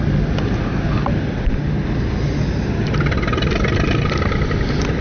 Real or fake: real